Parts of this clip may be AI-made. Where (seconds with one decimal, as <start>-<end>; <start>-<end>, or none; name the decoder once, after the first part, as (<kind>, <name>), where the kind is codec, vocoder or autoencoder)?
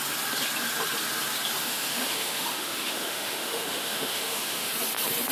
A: 1.6-4.7 (autoencoder, DAC-VAE)